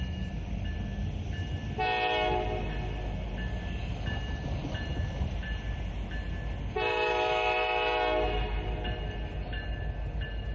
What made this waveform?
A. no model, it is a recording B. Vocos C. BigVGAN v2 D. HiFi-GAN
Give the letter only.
A